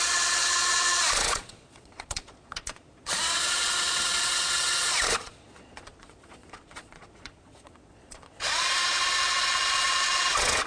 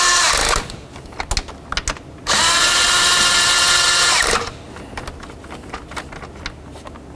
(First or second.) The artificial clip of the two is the first